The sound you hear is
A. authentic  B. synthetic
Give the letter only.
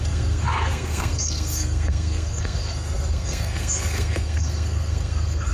B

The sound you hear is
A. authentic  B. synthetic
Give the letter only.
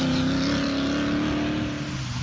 A